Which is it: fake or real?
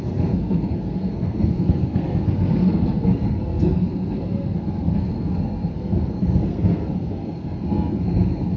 fake